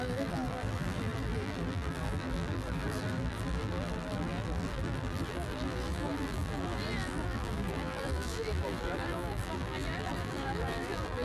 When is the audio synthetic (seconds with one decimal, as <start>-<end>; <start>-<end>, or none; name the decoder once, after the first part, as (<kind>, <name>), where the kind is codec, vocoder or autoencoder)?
0.0-11.2 (vocoder, BigVGAN v2)